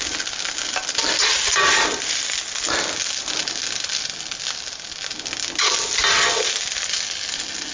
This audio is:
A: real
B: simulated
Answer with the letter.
A